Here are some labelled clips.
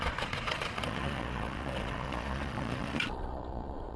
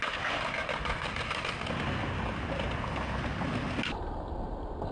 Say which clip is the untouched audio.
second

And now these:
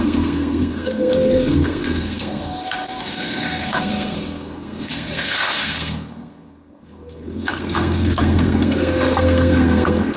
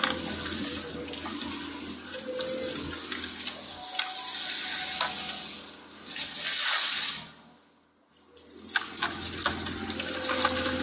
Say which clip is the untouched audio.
second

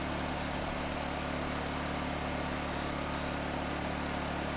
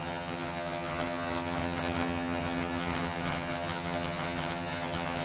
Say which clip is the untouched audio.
first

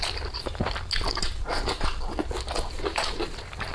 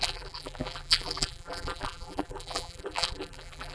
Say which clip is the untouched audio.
first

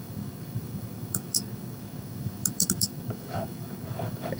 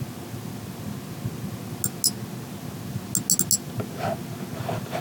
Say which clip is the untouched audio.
second